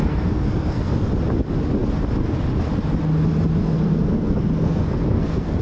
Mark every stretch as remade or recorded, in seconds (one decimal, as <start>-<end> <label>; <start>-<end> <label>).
0.0-1.1 remade; 1.1-3.6 recorded; 3.6-5.6 remade